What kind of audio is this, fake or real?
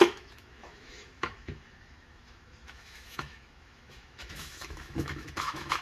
fake